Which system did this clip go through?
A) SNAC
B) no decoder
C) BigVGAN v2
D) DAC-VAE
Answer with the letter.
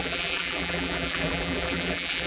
C